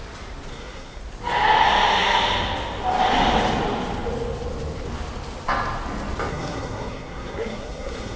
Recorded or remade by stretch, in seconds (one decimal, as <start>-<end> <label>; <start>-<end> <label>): 0.0-0.5 recorded; 0.5-1.0 remade; 1.0-6.3 recorded; 6.3-8.2 remade

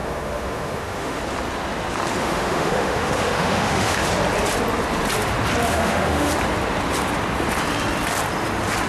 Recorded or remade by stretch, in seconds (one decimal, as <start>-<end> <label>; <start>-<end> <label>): 0.0-1.2 remade; 1.2-2.2 recorded; 2.2-4.1 remade; 4.1-5.7 recorded; 5.7-6.3 remade; 6.3-8.9 recorded

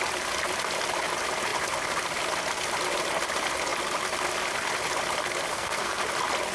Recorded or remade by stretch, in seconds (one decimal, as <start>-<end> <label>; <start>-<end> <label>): 0.0-5.5 recorded; 5.5-6.0 remade; 6.0-6.5 recorded